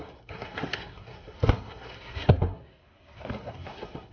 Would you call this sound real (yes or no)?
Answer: no